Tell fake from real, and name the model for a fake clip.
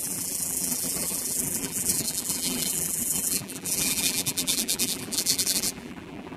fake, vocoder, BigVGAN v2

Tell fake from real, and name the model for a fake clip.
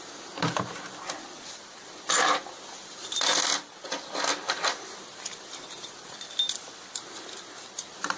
real